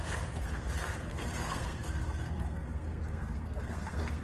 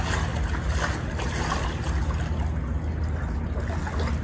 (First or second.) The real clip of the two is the second